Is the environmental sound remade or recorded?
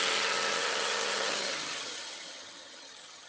remade